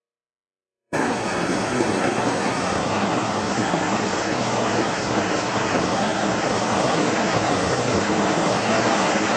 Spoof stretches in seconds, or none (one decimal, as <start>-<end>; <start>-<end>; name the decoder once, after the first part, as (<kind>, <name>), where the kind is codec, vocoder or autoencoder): 0.0-9.4 (codec, SNAC)